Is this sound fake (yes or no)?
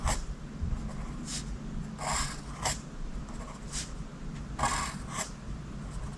no